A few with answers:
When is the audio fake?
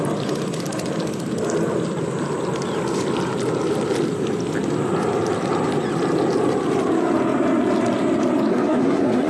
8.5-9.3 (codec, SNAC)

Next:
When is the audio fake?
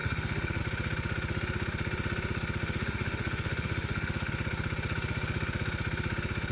0.0-0.6 (autoencoder, DAC-VAE); 2.6-4.3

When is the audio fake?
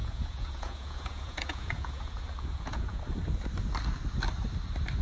0.0-3.0 (vocoder, Vocos)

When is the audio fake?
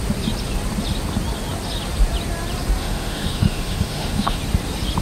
2.8-4.4 (autoencoder, DAC-VAE)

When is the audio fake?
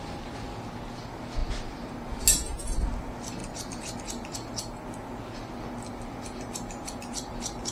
3.4-4.0 (vocoder, BigVGAN v2)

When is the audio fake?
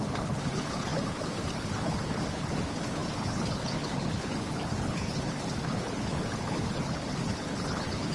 0.0-8.1 (codec, HILCodec)